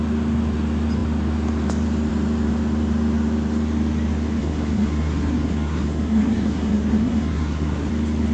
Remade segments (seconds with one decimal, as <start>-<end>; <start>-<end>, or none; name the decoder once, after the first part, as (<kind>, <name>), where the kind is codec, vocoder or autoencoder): 4.4-7.9 (codec, SNAC)